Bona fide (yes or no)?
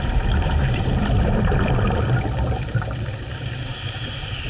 no